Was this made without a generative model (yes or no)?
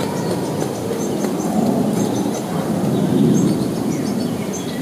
yes